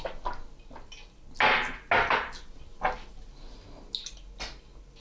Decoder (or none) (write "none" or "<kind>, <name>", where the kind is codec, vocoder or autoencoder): none